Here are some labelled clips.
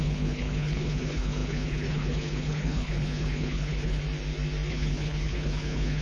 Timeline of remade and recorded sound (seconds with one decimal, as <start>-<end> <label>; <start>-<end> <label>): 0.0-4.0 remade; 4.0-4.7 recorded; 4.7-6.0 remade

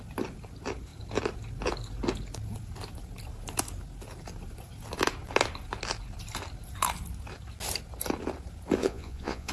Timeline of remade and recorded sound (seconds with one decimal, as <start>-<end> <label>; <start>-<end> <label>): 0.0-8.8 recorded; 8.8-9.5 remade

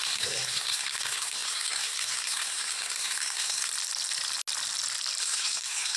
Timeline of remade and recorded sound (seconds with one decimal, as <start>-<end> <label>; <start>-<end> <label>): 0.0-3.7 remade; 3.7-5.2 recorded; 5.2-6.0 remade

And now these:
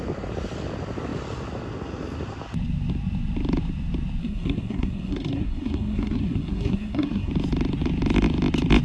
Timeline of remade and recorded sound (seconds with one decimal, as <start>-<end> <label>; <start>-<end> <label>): 0.0-4.2 recorded; 4.2-7.3 remade; 7.3-8.8 recorded

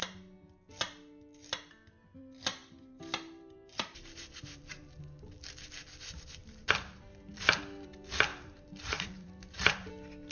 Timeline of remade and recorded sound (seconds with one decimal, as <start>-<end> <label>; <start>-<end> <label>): 0.0-2.6 recorded; 2.6-5.0 remade; 5.0-6.4 recorded; 6.4-7.6 remade; 7.6-8.3 recorded; 8.3-9.9 remade; 9.9-10.3 recorded

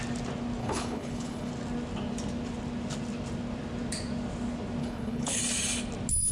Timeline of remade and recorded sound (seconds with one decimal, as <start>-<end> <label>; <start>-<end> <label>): 0.0-0.6 recorded; 0.6-1.5 remade; 1.5-4.8 recorded; 4.8-5.4 remade; 5.4-6.3 recorded

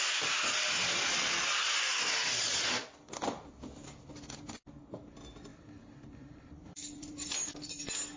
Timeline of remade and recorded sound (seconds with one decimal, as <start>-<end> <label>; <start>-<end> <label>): 0.0-5.5 recorded; 5.5-7.4 remade; 7.4-8.2 recorded

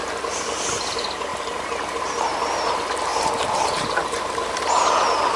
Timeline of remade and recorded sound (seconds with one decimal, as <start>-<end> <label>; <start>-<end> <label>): 0.0-5.4 recorded